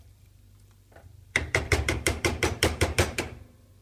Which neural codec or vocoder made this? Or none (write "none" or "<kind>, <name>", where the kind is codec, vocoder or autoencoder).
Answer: vocoder, BigVGAN v2